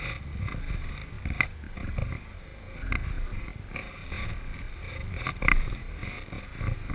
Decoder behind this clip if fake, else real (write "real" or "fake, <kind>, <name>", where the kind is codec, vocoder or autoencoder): real